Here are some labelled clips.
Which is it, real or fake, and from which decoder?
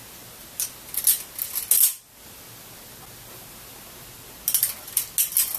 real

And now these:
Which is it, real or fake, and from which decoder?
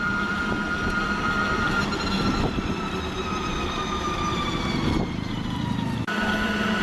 fake, vocoder, BigVGAN v2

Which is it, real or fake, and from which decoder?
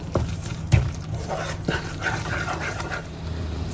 fake, vocoder, BigVGAN v2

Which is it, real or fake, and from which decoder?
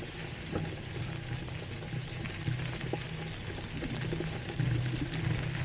real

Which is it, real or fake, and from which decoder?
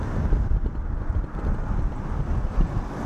real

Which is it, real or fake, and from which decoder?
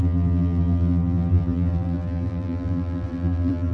fake, vocoder, BigVGAN v2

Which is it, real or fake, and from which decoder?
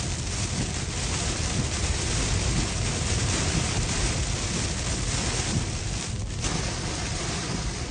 fake, vocoder, BigVGAN v2